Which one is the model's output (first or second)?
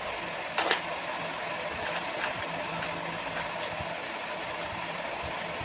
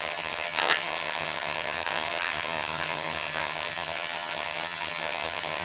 second